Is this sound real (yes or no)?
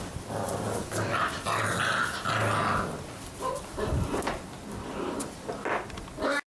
yes